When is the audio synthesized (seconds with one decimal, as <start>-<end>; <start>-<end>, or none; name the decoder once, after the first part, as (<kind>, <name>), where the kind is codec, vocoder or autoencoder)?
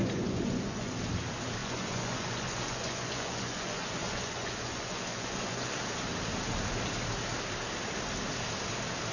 0.0-0.9 (vocoder, Vocos); 1.6-5.7